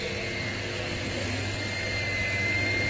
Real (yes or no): yes